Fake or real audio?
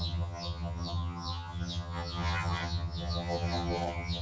fake